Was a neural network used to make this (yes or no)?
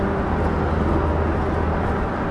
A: no